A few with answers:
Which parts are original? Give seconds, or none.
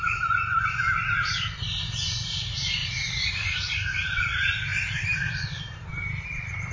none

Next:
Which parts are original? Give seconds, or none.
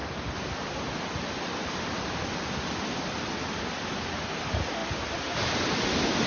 0.0-4.8; 5.8-6.3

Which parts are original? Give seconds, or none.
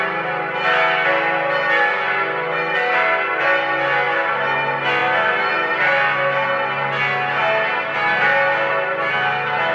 0.0-5.0; 5.7-9.7